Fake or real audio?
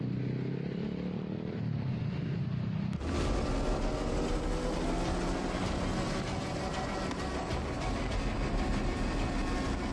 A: real